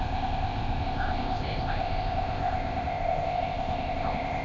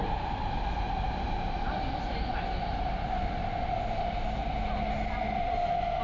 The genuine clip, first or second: second